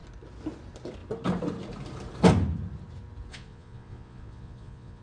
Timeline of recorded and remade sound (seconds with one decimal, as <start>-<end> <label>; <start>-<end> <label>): 0.0-3.3 recorded; 3.3-5.0 remade